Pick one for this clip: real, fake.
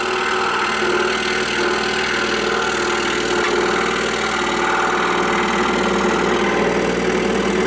real